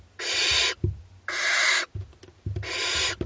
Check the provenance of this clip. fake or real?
real